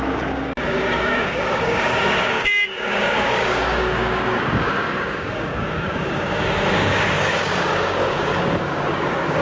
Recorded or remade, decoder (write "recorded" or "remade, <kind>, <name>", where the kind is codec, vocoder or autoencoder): remade, codec, DAC